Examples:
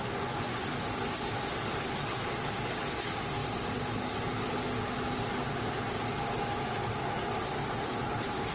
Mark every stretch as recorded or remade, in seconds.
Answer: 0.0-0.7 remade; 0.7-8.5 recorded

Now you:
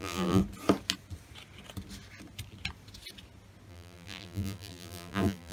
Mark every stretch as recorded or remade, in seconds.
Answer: 0.0-0.4 remade; 0.4-3.7 recorded; 3.7-5.5 remade